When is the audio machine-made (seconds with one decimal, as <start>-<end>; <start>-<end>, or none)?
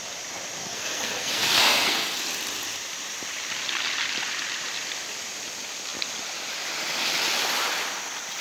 0.6-2.2